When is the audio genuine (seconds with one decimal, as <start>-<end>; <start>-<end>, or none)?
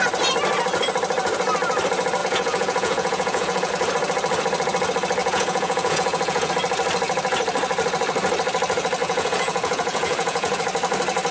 0.0-2.2; 3.7-5.2; 6.5-9.0; 10.6-11.3